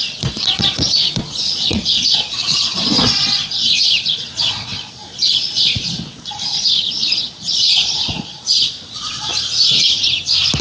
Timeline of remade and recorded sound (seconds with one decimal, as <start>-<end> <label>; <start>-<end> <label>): 0.0-9.3 remade; 9.3-10.6 recorded